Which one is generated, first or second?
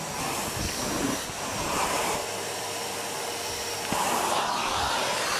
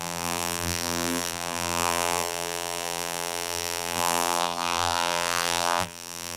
second